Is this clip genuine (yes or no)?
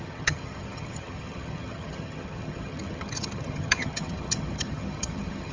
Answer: no